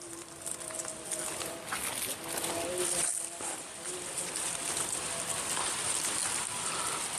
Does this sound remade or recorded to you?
recorded